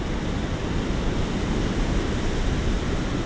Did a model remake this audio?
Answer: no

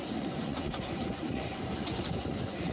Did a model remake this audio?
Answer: yes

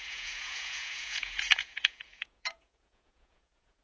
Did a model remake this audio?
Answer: yes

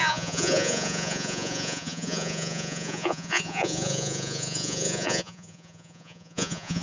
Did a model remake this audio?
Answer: yes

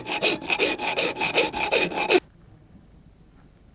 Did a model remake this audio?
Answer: no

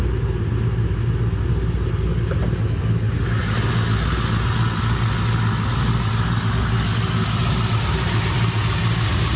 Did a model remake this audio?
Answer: no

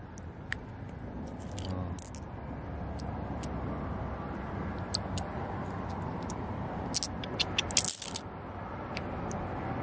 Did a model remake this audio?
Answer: no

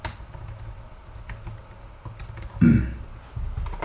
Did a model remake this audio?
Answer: no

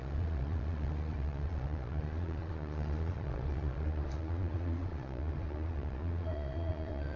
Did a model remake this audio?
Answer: yes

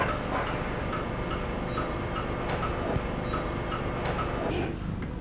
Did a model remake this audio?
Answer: no